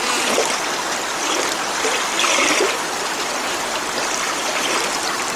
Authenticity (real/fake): real